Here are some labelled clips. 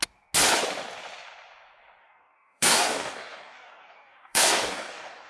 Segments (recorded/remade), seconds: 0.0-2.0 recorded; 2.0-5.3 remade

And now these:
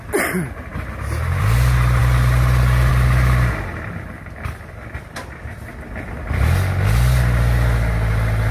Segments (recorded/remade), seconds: 0.0-8.5 recorded

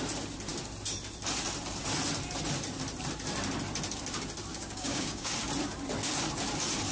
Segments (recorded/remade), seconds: 0.0-4.5 recorded; 4.5-5.3 remade; 5.3-6.9 recorded

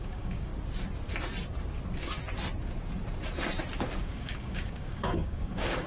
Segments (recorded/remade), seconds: 0.0-0.5 remade; 0.5-4.0 recorded; 4.0-5.9 remade

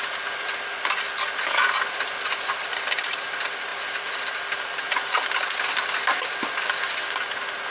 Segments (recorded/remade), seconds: 0.0-7.7 recorded

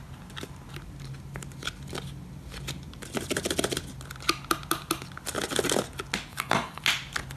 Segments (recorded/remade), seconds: 0.0-6.3 recorded; 6.3-6.8 remade; 6.8-7.4 recorded